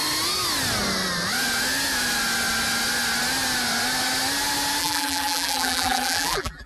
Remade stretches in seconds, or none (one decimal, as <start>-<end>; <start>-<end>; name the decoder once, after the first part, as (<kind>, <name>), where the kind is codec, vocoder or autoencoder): 4.8-6.7 (vocoder, BigVGAN v2)

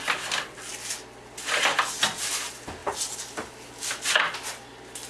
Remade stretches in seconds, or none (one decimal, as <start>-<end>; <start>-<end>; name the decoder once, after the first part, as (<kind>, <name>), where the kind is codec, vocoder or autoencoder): none

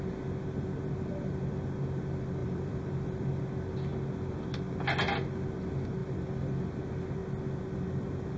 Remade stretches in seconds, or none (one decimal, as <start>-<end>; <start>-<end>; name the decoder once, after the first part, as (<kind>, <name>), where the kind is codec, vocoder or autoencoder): 2.4-3.4 (vocoder, BigVGAN v2); 6.0-6.5

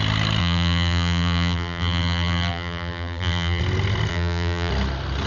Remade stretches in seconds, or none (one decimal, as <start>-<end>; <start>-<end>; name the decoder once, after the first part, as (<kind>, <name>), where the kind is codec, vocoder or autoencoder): 0.4-3.6 (vocoder, BigVGAN v2); 4.1-4.7

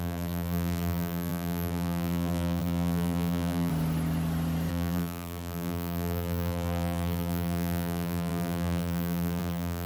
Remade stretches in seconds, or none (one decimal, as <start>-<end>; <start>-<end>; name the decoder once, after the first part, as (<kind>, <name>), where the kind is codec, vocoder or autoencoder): 0.0-3.7 (vocoder, BigVGAN v2); 4.7-9.9

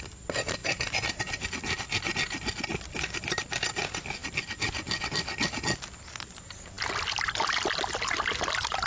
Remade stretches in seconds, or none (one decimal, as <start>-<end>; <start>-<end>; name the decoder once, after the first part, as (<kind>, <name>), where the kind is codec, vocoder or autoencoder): 0.6-1.2 (vocoder, BigVGAN v2)

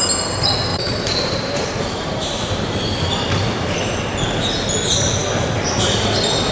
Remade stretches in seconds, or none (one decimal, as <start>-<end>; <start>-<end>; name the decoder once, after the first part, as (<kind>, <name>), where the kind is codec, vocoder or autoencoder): 0.7-2.4 (vocoder, BigVGAN v2)